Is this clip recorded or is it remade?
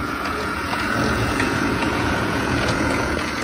remade